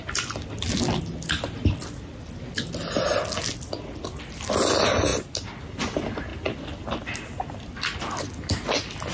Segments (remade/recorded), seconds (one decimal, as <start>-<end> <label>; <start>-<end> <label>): 0.0-9.1 recorded